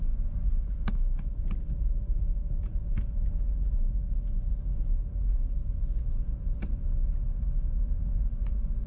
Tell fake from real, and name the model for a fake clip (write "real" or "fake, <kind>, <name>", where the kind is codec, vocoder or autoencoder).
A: real